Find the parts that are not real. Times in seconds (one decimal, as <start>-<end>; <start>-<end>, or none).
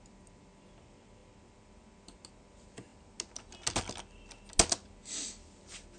none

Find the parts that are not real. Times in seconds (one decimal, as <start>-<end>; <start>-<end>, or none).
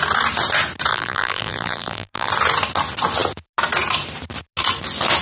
0.9-2.3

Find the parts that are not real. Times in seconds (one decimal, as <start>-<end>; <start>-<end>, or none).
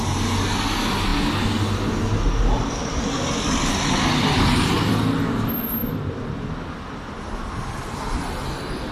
none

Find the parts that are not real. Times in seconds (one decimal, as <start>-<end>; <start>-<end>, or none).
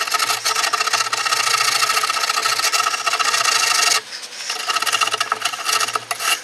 none